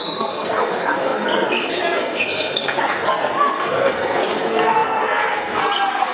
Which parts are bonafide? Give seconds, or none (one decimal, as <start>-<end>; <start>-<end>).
none

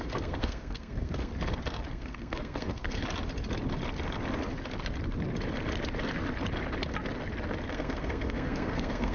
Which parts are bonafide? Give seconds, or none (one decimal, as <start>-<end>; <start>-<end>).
1.3-1.9; 3.0-7.7

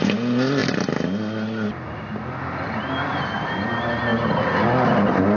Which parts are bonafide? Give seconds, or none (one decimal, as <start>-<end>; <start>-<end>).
0.0-5.4

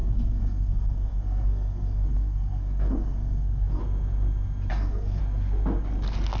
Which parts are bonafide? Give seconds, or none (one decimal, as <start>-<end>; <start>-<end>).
3.8-4.7; 5.2-6.4

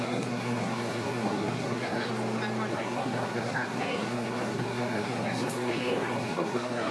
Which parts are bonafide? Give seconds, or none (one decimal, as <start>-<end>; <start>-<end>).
2.1-2.7

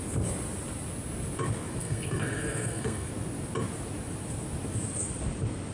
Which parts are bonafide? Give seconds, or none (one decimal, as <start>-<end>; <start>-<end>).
0.0-1.8; 3.1-5.7

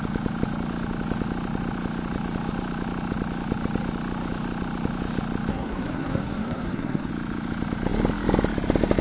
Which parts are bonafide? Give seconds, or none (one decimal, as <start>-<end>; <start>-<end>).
0.0-5.5; 7.1-9.0